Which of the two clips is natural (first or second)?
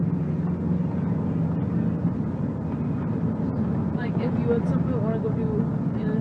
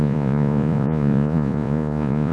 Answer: first